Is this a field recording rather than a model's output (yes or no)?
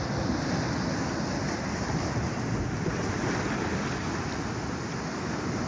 yes